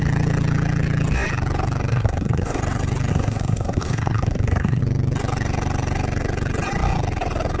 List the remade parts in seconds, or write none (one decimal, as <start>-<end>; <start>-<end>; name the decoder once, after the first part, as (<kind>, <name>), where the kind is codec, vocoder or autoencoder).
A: 1.9-2.6 (codec, SNAC); 3.1-4.8